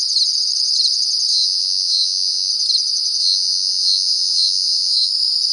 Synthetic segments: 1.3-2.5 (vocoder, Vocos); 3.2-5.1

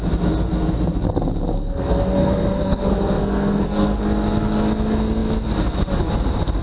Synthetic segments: 1.5-4.0 (codec, SNAC)

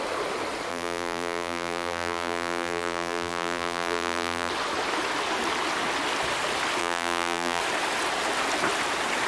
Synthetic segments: 0.7-4.5 (vocoder, BigVGAN v2); 6.8-7.6